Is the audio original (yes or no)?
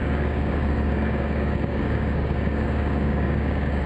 no